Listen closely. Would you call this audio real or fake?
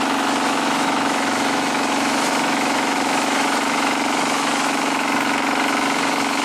fake